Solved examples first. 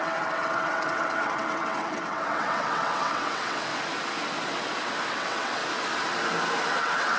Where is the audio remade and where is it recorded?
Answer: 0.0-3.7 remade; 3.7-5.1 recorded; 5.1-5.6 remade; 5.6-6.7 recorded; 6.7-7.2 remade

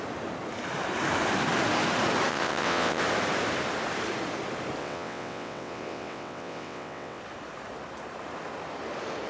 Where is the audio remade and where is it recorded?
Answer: 0.0-2.3 recorded; 2.3-3.0 remade; 3.0-4.8 recorded; 4.8-7.2 remade; 7.2-9.3 recorded

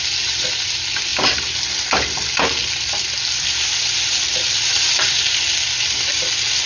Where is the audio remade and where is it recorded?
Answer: 0.0-6.7 recorded

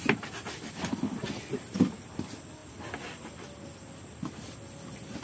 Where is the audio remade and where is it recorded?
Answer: 0.0-5.2 recorded

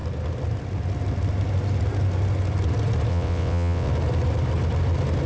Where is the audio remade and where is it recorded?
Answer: 0.0-3.1 recorded; 3.1-3.9 remade; 3.9-5.3 recorded

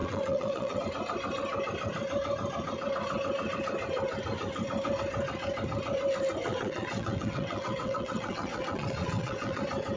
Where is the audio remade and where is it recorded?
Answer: 0.0-0.8 remade; 0.8-6.4 recorded; 6.4-9.6 remade; 9.6-10.0 recorded

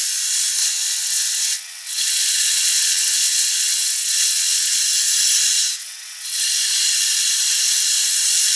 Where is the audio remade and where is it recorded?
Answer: 0.0-0.6 recorded; 0.6-4.8 remade; 4.8-5.8 recorded; 5.8-6.4 remade; 6.4-8.6 recorded

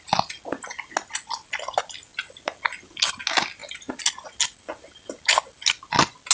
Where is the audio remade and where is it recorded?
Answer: 0.0-6.3 recorded